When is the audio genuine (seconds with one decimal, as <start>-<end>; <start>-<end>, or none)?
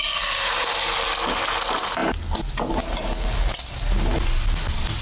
0.0-5.0